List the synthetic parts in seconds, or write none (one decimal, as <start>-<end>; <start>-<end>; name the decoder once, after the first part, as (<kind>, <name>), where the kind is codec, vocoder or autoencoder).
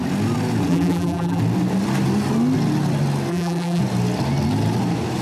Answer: 0.7-1.4 (vocoder, BigVGAN v2); 3.3-3.8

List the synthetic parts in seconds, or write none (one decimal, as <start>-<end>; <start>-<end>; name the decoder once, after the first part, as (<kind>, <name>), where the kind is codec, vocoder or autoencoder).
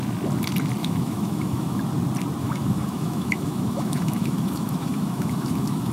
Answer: 0.8-1.8 (autoencoder, DAC-VAE); 2.4-5.9